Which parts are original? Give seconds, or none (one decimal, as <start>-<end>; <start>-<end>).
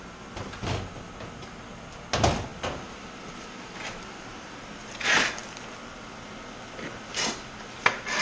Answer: 0.0-8.2